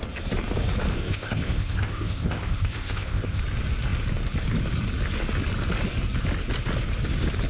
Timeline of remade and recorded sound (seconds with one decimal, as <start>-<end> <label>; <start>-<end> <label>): 0.0-0.9 recorded; 0.9-3.4 remade; 3.4-7.5 recorded